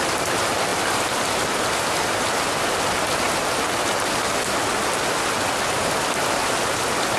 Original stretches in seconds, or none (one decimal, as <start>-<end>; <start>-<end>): 0.0-7.2